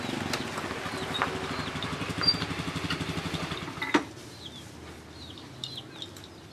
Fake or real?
real